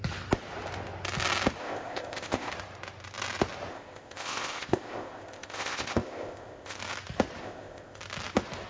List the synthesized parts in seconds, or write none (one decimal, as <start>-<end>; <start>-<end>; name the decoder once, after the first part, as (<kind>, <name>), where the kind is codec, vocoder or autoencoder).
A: 1.6-2.5 (codec, ZipCodec); 3.7-6.8; 7.4-8.0